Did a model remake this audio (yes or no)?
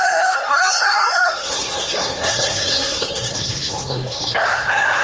yes